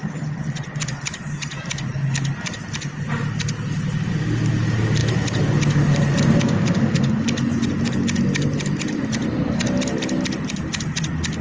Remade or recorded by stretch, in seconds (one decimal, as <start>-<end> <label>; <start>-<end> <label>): 0.0-11.4 recorded